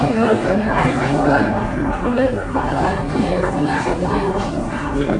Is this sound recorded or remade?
remade